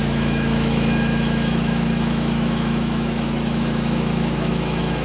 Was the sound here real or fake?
fake